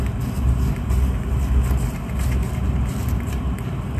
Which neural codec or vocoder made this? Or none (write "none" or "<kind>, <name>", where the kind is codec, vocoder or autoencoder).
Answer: none